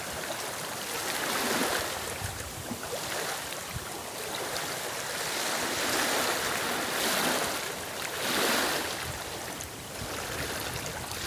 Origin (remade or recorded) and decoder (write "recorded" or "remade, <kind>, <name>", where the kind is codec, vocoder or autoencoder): recorded